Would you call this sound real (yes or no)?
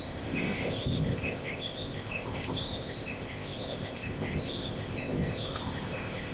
no